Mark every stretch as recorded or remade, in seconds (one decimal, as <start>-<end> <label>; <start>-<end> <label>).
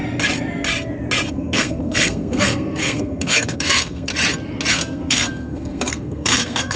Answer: 0.0-1.3 recorded; 1.3-4.1 remade; 4.1-4.7 recorded; 4.7-6.8 remade